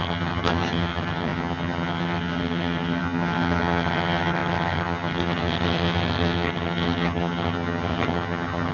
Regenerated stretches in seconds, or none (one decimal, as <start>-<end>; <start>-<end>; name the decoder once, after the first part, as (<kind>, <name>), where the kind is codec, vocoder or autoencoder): 0.0-8.7 (vocoder, HiFi-GAN)